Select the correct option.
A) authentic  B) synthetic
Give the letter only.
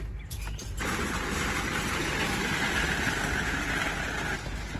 B